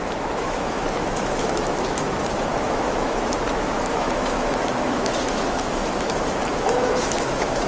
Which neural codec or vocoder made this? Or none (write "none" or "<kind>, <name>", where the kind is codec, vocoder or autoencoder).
autoencoder, DAC-VAE